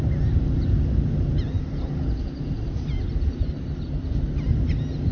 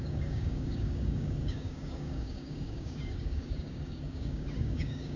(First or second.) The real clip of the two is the first